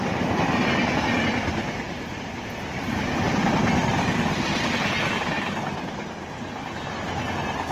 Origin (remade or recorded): recorded